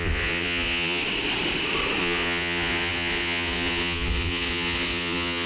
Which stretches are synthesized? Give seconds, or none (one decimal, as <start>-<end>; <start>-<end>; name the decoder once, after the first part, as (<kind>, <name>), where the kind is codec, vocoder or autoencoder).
0.0-1.0 (vocoder, Vocos); 2.0-5.5